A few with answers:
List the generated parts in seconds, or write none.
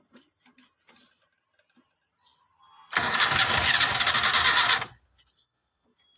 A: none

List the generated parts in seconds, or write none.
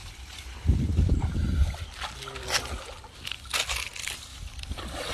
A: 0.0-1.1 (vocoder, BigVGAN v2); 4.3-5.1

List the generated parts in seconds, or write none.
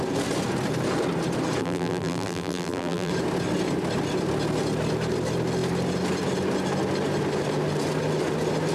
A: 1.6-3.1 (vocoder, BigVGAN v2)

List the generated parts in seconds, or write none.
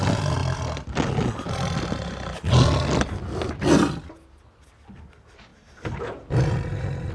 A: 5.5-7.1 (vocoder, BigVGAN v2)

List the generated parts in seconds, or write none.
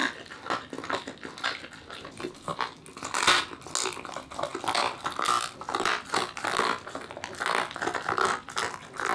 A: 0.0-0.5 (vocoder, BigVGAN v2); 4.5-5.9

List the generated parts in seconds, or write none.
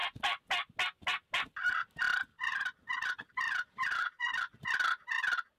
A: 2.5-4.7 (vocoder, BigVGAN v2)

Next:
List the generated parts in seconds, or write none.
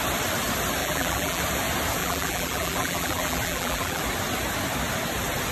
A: 0.8-1.4 (vocoder, BigVGAN v2); 2.0-4.0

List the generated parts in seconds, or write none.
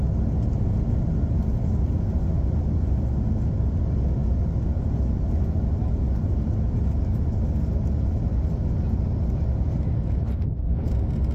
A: none